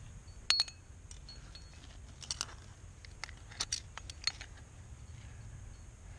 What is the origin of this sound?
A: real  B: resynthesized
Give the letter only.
A